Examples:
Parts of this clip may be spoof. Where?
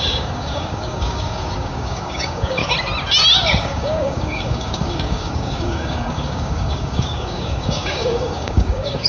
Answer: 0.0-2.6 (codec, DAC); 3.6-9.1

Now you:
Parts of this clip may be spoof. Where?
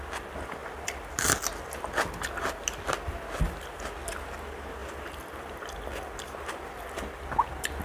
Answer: none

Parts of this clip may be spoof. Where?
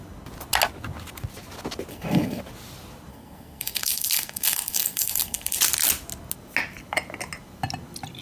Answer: 1.9-2.4 (codec, SNAC); 3.1-5.6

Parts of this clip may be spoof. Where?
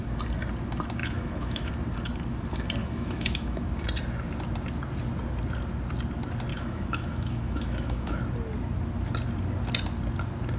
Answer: 1.0-1.7 (autoencoder, DAC-VAE); 2.8-3.6; 6.5-8.2